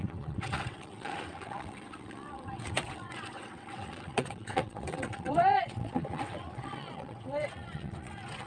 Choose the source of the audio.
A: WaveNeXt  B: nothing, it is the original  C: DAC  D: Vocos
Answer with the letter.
A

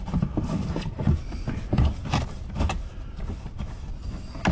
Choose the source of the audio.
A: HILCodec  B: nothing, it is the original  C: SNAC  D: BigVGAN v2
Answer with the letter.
B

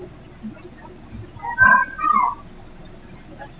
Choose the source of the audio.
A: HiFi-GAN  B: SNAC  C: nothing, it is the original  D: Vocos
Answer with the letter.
C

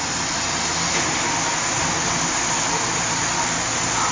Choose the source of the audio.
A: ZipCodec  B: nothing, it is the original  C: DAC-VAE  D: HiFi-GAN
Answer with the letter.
B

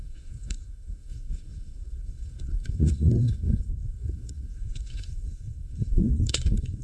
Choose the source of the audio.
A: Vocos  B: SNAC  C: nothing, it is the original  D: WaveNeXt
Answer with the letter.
B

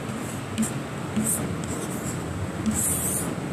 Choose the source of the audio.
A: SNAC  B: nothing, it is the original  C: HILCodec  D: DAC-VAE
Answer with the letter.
B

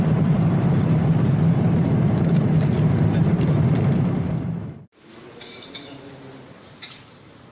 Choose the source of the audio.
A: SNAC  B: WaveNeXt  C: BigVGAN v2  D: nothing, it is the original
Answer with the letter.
C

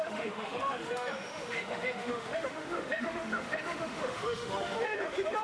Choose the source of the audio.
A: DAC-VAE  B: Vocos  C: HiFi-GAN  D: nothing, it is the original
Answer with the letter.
A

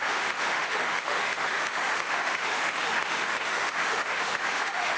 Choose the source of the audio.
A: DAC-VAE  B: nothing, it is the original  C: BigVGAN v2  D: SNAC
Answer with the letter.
A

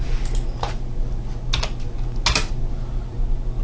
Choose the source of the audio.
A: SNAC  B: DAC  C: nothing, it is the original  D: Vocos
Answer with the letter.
C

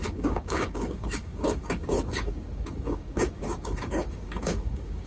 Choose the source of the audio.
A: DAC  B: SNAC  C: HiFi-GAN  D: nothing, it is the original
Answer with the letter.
A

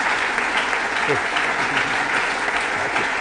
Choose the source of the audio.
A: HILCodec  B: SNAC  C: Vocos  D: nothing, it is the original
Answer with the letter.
C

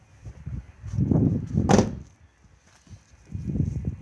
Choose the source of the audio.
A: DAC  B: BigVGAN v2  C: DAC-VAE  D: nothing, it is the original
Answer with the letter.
D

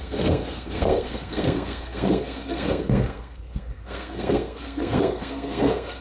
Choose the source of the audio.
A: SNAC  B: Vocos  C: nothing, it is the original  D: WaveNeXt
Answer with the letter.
A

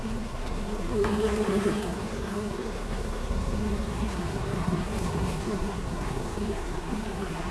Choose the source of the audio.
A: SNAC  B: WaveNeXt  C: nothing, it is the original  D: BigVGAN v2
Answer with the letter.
A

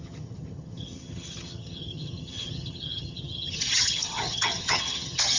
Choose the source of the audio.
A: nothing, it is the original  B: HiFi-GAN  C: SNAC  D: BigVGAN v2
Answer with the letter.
B